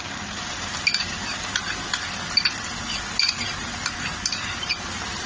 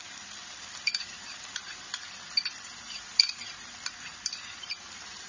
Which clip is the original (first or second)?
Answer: first